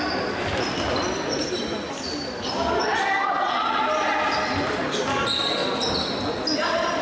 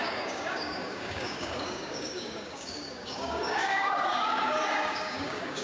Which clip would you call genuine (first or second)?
first